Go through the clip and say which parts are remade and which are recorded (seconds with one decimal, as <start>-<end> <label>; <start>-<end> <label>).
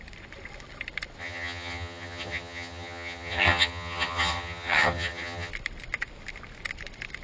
0.0-1.2 recorded; 1.2-5.5 remade; 5.5-7.2 recorded